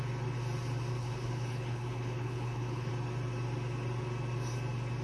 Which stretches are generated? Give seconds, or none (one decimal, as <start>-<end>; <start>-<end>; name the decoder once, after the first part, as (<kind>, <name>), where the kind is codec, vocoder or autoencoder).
0.9-2.9 (codec, HILCodec)